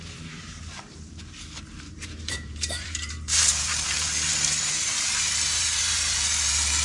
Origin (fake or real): fake